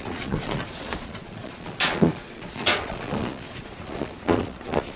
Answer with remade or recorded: remade